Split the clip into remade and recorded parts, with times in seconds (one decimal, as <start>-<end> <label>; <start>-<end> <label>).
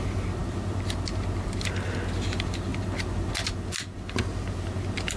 0.0-5.2 recorded